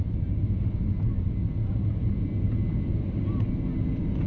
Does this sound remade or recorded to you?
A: recorded